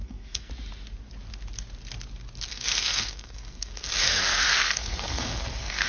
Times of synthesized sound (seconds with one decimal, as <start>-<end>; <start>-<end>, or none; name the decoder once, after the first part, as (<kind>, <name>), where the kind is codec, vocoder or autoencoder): 0.0-0.5 (codec, SNAC); 2.5-5.9